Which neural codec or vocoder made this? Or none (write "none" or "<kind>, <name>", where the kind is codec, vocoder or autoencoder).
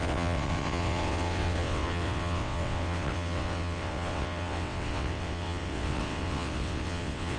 vocoder, WaveNeXt